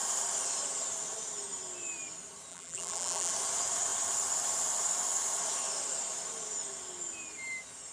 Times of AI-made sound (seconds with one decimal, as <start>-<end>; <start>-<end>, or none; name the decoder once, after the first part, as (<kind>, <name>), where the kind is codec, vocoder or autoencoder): 2.5-3.3 (vocoder, BigVGAN v2)